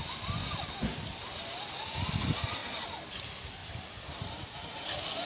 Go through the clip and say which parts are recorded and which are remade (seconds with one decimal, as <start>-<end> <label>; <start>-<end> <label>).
0.0-5.2 recorded